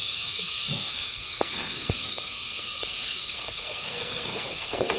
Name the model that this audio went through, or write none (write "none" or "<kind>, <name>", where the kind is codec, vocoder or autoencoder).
codec, SNAC